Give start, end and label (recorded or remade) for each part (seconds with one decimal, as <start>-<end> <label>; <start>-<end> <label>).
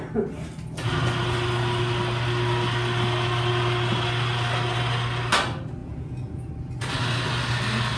0.0-5.8 recorded; 5.8-6.5 remade; 6.5-8.0 recorded